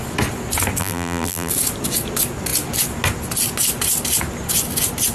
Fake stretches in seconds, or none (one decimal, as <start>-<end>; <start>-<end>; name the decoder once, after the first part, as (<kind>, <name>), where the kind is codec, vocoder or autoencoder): 0.8-1.5 (vocoder, BigVGAN v2)